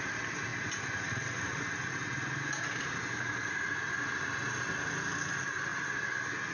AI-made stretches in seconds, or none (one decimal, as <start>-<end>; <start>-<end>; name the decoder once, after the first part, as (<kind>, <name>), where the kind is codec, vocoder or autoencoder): none